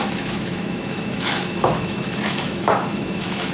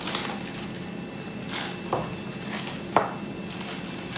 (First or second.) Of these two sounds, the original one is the second